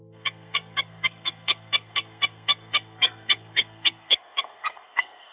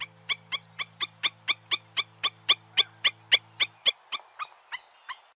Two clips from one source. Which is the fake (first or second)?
first